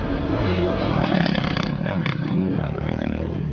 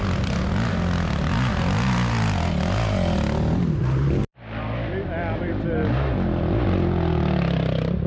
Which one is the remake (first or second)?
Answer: first